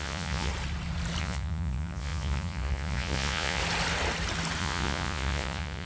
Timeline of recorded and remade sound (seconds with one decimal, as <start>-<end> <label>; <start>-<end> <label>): 0.0-0.5 remade; 0.5-1.2 recorded; 1.2-3.6 remade; 3.6-4.6 recorded; 4.6-5.9 remade